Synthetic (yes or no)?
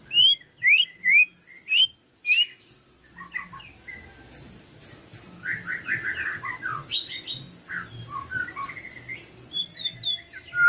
no